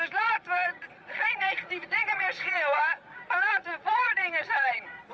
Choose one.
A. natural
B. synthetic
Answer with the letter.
B